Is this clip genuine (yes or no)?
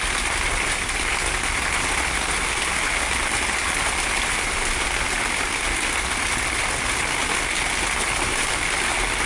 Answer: yes